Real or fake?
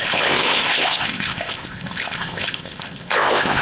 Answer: fake